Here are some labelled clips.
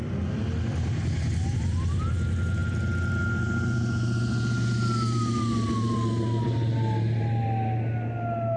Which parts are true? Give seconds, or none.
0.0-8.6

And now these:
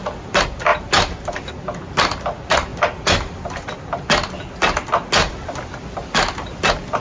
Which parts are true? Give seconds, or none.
2.7-5.3

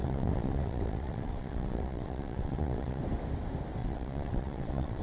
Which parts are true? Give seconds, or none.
3.0-3.8

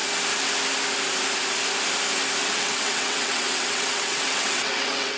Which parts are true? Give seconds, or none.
0.0-2.4

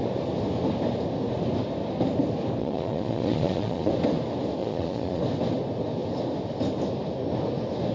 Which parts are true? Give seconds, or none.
0.0-2.6; 3.9-4.6; 5.2-7.9